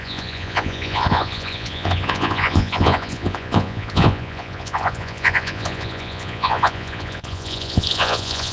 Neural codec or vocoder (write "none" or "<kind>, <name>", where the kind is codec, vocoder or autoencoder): vocoder, Vocos